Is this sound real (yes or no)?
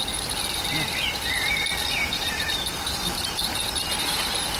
yes